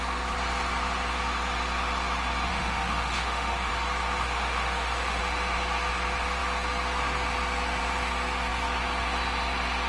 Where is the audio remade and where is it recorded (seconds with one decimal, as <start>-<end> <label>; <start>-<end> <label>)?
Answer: 0.0-2.5 recorded; 2.5-3.7 remade; 3.7-4.2 recorded; 4.2-5.2 remade; 5.2-9.9 recorded